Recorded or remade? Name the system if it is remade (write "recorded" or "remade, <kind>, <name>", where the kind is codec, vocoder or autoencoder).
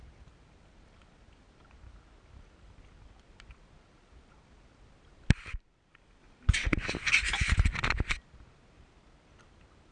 recorded